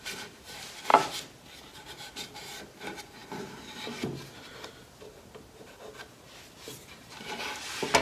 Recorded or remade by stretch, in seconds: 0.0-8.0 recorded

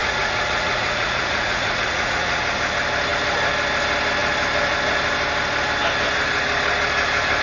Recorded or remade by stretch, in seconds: 0.0-2.4 remade; 2.4-7.4 recorded

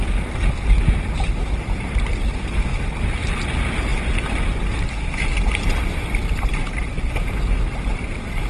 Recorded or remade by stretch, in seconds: 0.0-3.9 recorded; 3.9-5.1 remade; 5.1-8.5 recorded

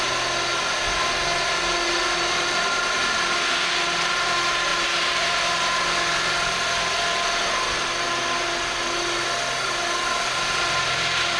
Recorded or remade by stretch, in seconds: 0.0-4.7 recorded; 4.7-5.4 remade; 5.4-11.4 recorded

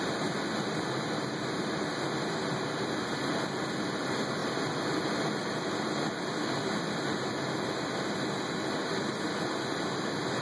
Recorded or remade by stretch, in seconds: 0.0-10.4 recorded

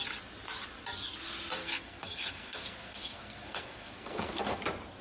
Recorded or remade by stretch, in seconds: 0.0-1.6 recorded; 1.6-4.6 remade; 4.6-5.0 recorded